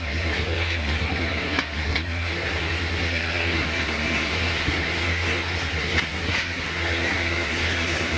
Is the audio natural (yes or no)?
no